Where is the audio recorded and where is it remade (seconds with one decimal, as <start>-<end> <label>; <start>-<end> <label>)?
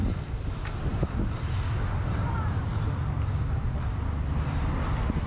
0.0-5.3 recorded